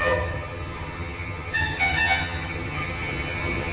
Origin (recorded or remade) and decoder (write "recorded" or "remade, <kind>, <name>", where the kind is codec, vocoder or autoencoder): remade, vocoder, HiFi-GAN